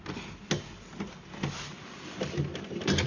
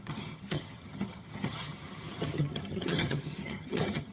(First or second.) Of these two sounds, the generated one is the second